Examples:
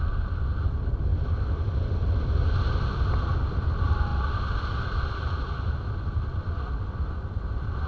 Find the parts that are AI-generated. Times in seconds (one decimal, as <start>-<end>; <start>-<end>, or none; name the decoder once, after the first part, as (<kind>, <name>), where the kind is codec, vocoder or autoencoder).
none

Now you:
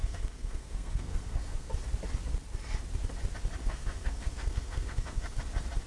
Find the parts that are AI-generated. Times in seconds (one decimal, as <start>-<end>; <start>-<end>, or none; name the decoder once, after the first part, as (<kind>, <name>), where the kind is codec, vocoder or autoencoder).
0.0-1.7 (codec, SNAC); 3.6-5.4

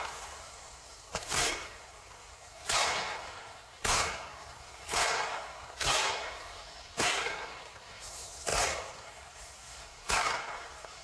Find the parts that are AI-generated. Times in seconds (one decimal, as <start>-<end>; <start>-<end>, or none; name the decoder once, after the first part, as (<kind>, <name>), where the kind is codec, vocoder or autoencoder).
0.0-11.0 (codec, SNAC)

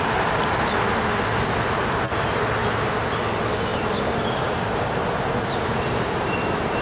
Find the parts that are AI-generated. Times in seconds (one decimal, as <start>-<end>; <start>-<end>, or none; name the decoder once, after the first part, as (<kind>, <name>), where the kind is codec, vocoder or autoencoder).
2.6-3.1 (vocoder, BigVGAN v2); 3.7-6.8